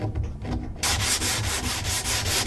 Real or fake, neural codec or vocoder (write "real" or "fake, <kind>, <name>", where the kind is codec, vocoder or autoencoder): real